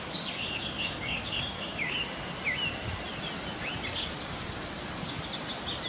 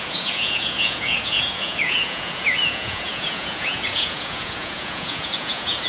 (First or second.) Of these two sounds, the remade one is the second